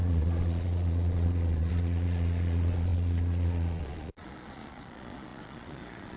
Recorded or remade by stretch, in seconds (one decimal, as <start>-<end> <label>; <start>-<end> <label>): 0.0-6.2 remade